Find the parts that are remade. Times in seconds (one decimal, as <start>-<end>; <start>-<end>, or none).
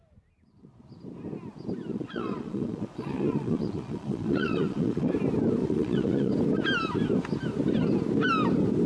1.9-5.1; 5.6-6.3